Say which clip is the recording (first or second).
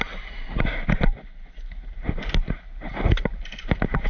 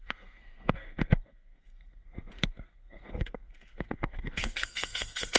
first